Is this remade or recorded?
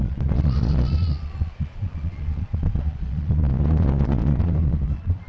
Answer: remade